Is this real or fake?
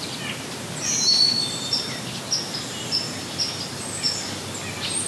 real